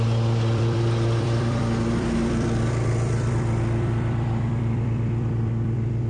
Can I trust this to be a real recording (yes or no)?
no